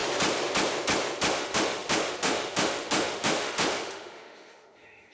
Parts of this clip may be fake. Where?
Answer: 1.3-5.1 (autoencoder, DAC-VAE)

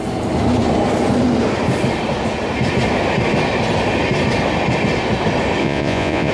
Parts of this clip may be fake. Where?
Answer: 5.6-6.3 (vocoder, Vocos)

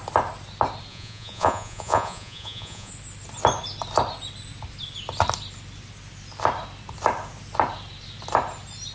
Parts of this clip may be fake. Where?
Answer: 0.9-2.9 (vocoder, Vocos)